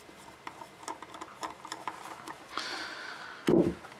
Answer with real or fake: real